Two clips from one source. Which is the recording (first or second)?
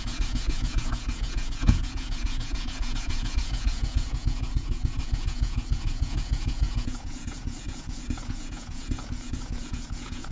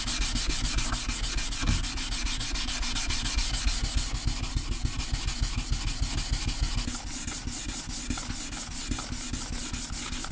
second